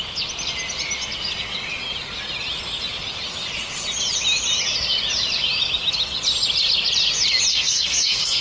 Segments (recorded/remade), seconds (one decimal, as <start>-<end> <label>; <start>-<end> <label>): 0.0-7.5 recorded; 7.5-8.4 remade